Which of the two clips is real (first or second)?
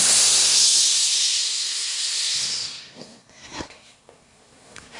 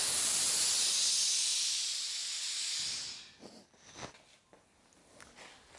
second